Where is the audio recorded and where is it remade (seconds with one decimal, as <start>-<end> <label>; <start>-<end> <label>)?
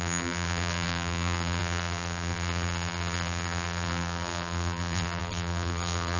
0.0-6.2 remade